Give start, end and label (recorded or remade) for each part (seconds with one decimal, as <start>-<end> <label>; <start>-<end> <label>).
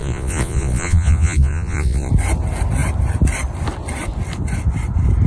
0.0-2.1 remade; 2.1-5.3 recorded